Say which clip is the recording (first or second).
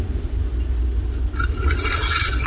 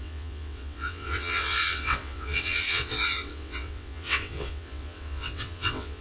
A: first